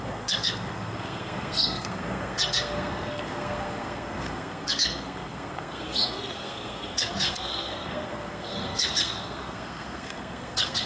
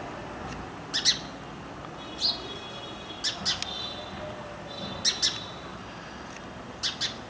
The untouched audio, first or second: second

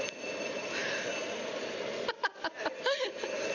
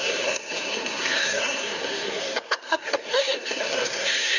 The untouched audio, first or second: first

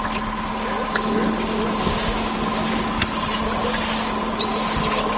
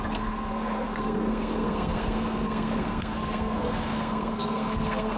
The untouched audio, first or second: first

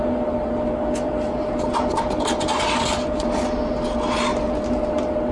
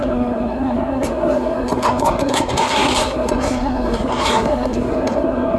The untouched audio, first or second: first